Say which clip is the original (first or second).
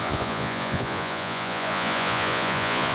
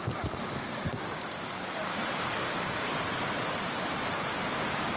second